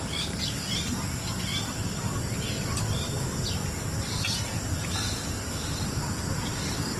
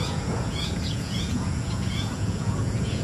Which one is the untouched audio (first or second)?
first